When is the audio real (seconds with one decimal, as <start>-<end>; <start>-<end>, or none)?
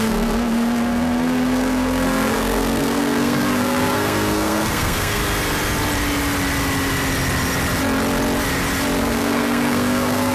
5.2-9.0